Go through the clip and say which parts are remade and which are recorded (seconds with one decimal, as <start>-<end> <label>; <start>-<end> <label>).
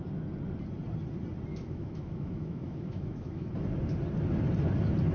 0.0-1.5 recorded; 1.5-3.5 remade; 3.5-5.1 recorded